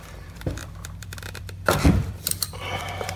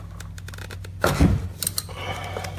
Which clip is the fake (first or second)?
first